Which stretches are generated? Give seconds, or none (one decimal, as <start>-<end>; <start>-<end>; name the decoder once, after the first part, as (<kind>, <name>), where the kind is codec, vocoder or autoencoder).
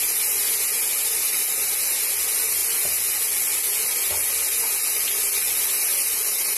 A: none